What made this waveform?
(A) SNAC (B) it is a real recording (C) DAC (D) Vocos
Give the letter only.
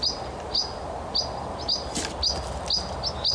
B